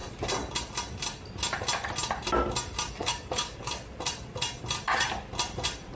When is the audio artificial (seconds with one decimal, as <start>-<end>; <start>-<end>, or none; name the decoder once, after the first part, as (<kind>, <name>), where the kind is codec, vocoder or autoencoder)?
3.0-3.7 (codec, DAC)